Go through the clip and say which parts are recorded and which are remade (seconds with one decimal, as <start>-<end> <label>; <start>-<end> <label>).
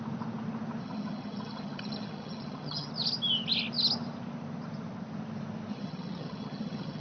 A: 0.0-0.8 recorded; 0.8-2.9 remade; 2.9-5.7 recorded; 5.7-7.0 remade